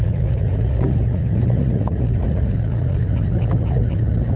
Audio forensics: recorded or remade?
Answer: remade